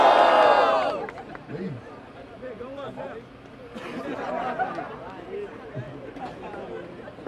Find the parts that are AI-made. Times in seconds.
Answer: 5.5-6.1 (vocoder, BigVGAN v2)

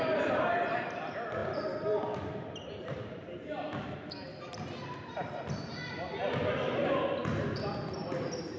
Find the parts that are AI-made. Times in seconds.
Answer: 0.0-7.2 (vocoder, BigVGAN v2); 7.8-8.6

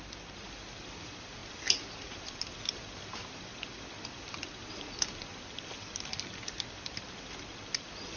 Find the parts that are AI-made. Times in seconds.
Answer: 3.5-7.7 (vocoder, BigVGAN v2)